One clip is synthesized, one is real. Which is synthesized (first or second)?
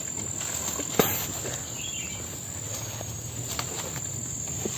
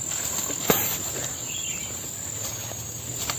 second